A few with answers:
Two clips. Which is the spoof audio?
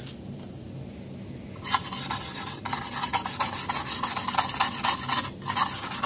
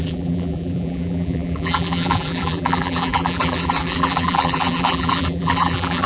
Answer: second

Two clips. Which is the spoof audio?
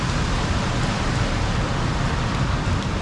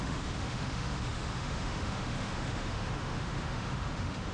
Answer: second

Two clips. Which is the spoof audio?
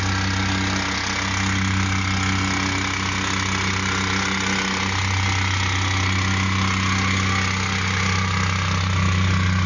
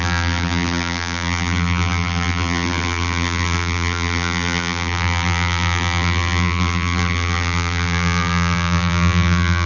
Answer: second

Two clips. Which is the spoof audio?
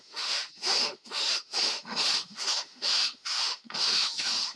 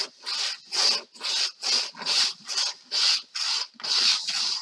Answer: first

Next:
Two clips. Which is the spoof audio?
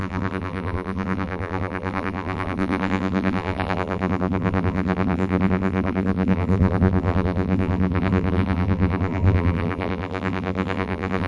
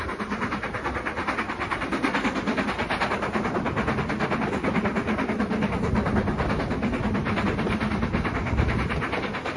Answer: first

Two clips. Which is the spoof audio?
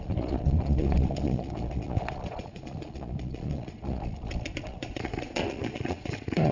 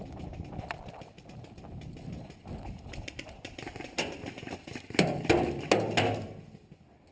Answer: first